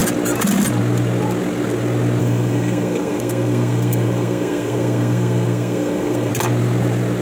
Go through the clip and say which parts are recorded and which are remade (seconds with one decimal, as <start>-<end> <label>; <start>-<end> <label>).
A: 0.0-2.2 recorded; 2.2-6.3 remade; 6.3-7.2 recorded